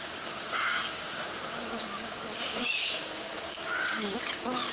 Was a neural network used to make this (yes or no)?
yes